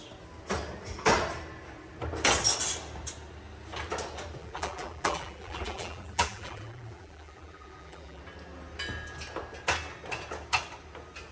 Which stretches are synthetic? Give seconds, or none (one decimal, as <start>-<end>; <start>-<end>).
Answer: 4.4-8.2